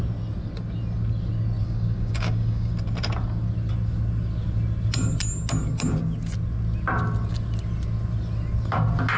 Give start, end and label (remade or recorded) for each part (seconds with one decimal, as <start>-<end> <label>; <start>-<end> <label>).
0.0-1.6 recorded; 1.6-2.7 remade; 2.7-9.2 recorded